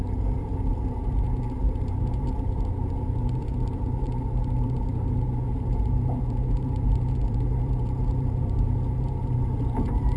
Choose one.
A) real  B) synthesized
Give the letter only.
B